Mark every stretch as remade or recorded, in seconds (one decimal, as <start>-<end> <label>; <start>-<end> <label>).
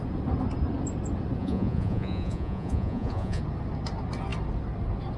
0.0-1.4 recorded; 1.4-3.4 remade; 3.4-5.2 recorded